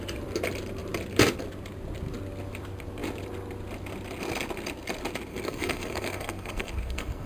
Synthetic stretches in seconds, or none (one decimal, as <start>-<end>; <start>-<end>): 5.3-7.3